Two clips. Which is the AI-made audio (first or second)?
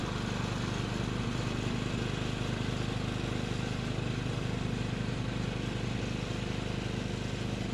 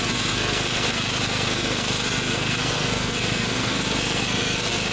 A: second